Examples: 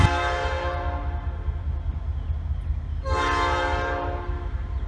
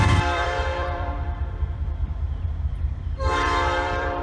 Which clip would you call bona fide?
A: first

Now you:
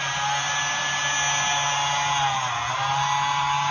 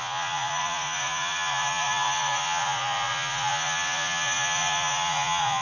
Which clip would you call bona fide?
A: first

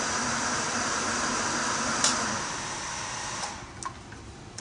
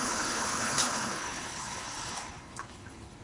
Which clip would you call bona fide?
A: first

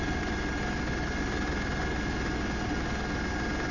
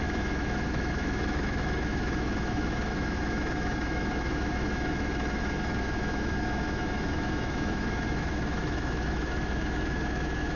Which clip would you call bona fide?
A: first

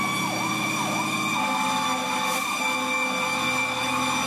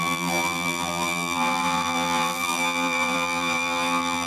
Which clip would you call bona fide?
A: first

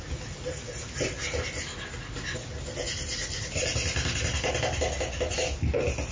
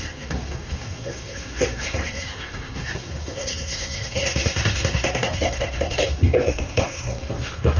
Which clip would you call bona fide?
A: first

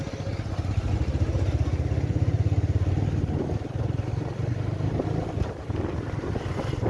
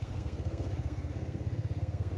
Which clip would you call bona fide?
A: first